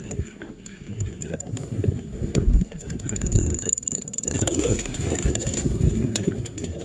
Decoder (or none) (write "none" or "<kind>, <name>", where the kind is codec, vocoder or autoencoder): codec, SNAC